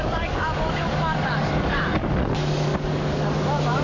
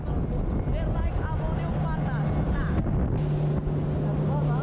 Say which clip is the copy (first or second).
first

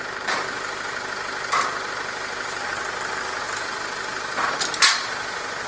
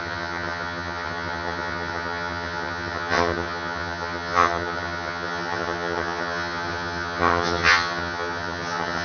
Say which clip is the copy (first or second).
second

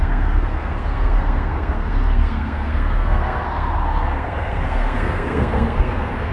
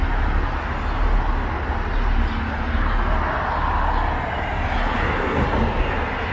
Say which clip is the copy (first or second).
first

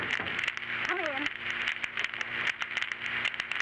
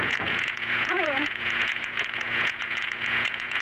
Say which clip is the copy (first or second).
second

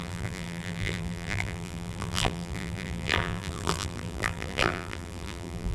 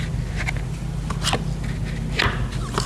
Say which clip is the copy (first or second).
first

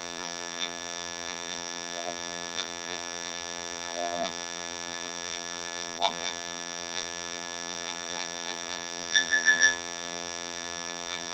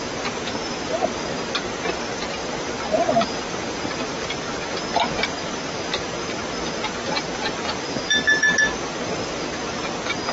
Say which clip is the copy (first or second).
first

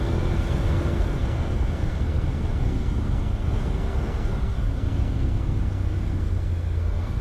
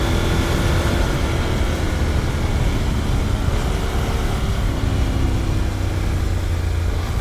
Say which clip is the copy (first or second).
first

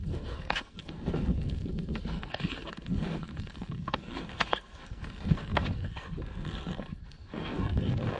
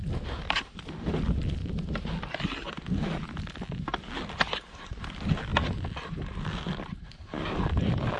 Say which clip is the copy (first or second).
first